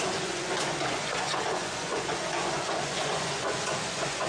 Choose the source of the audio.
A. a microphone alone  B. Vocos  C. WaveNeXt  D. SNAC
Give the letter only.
B